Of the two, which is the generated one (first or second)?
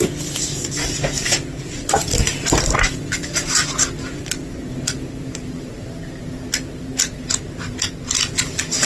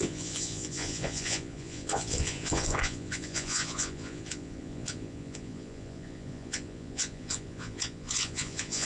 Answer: second